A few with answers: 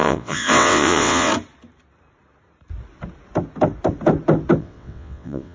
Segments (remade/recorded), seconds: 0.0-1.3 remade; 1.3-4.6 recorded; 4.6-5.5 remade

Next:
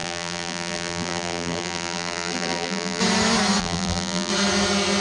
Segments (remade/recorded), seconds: 0.0-3.0 remade; 3.0-3.6 recorded; 3.6-4.3 remade; 4.3-5.0 recorded

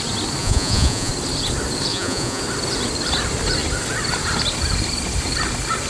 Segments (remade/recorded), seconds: 0.0-0.4 recorded; 0.4-1.1 remade; 1.1-1.9 recorded; 1.9-2.4 remade; 2.4-5.9 recorded

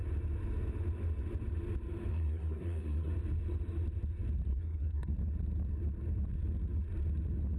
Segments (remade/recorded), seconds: 0.0-2.1 recorded; 2.1-3.1 remade; 3.1-4.5 recorded; 4.5-5.1 remade; 5.1-7.6 recorded

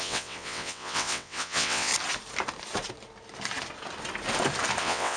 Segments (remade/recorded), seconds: 0.0-1.9 remade; 1.9-4.8 recorded; 4.8-5.2 remade

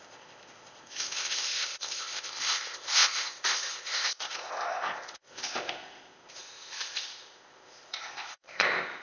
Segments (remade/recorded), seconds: 0.0-9.0 remade

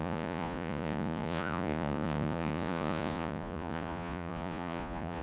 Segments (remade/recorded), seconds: 0.0-5.2 remade